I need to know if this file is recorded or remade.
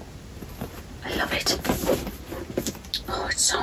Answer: recorded